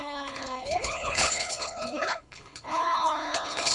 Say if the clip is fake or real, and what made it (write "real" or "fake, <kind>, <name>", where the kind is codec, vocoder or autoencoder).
fake, codec, HILCodec